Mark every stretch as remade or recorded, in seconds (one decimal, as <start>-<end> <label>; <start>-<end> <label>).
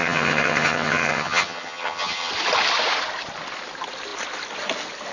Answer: 0.0-2.3 remade; 2.3-5.1 recorded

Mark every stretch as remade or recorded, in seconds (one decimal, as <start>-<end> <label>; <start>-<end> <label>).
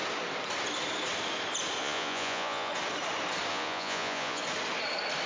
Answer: 0.0-1.8 recorded; 1.8-2.7 remade; 2.7-3.5 recorded; 3.5-4.4 remade; 4.4-5.3 recorded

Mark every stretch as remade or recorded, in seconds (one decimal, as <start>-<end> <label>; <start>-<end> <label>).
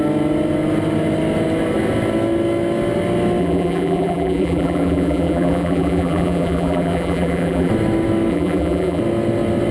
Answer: 0.0-3.4 recorded; 3.4-7.7 remade; 7.7-8.3 recorded; 8.3-9.0 remade; 9.0-9.7 recorded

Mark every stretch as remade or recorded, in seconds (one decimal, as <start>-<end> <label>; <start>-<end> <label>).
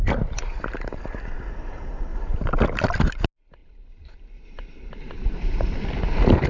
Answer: 0.0-2.1 recorded; 2.1-3.0 remade; 3.0-3.6 recorded; 3.6-5.7 remade; 5.7-6.5 recorded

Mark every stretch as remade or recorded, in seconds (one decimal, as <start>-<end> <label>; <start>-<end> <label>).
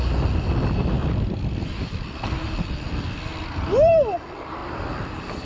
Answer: 0.0-1.0 recorded; 1.0-2.9 remade; 2.9-3.3 recorded; 3.3-3.9 remade; 3.9-4.6 recorded; 4.6-5.5 remade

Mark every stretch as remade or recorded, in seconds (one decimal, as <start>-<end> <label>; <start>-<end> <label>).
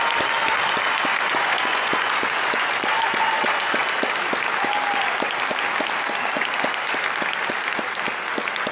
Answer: 0.0-1.1 recorded; 1.1-3.9 remade; 3.9-8.7 recorded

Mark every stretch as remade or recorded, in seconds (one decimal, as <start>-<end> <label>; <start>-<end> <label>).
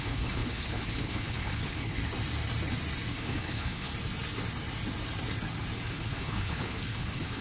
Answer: 0.0-2.0 remade; 2.0-3.1 recorded; 3.1-3.9 remade; 3.9-5.9 recorded; 5.9-7.4 remade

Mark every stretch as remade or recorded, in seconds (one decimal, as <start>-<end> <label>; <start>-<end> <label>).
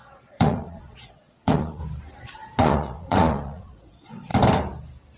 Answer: 0.0-1.8 remade; 1.8-2.6 recorded; 2.6-4.3 remade; 4.3-5.2 recorded